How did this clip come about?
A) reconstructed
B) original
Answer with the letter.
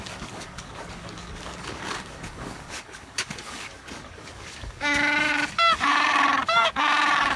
A